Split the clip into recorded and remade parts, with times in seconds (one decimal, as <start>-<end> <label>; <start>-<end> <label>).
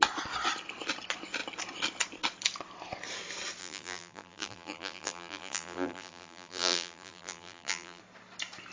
0.0-3.6 recorded; 3.6-8.0 remade; 8.0-8.7 recorded